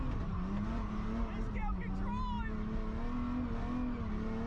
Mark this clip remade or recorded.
recorded